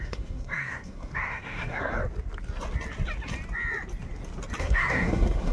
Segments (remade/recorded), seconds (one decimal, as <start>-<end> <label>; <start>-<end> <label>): 0.0-2.0 remade; 2.0-4.6 recorded; 4.6-5.5 remade